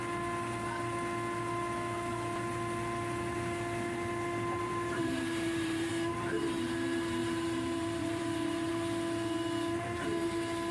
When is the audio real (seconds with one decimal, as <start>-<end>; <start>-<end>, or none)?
0.0-4.6; 5.9-7.2; 8.7-10.7